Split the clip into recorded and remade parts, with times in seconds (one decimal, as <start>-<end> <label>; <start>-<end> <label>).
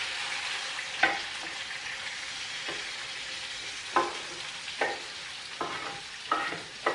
0.0-6.9 recorded